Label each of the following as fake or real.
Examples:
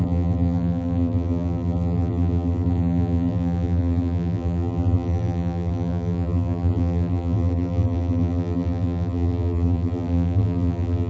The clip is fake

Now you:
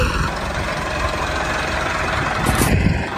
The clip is fake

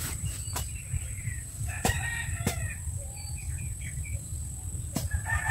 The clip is fake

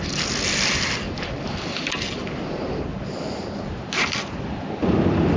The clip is real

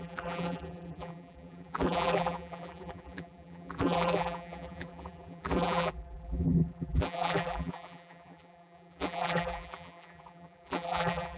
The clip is fake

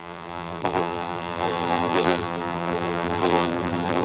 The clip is fake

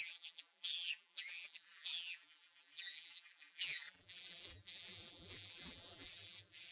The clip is fake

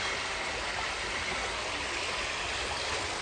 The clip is real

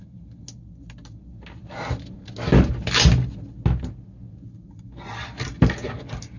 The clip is real